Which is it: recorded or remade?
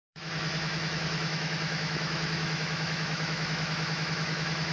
remade